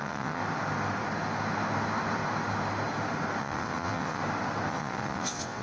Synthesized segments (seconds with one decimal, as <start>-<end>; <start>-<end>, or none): 0.0-0.4; 3.4-4.2; 4.7-5.6